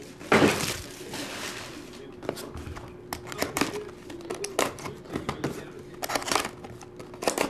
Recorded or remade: recorded